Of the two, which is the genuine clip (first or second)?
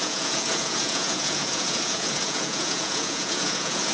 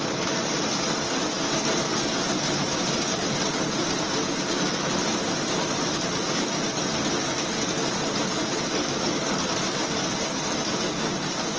second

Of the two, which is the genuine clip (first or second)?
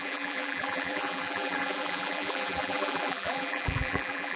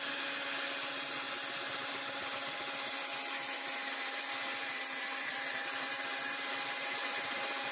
second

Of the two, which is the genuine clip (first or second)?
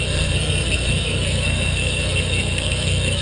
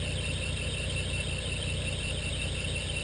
second